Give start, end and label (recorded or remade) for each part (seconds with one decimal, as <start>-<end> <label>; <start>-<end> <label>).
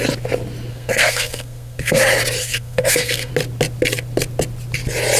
0.0-0.7 recorded; 0.7-2.0 remade; 2.0-2.4 recorded; 2.4-3.3 remade; 3.3-5.2 recorded